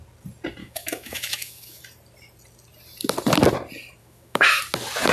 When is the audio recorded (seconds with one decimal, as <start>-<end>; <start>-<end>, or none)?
0.0-0.6; 1.8-4.0; 4.6-5.1